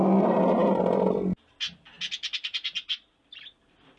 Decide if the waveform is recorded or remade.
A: recorded